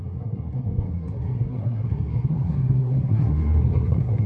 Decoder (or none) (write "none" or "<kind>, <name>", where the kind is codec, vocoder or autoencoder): codec, SNAC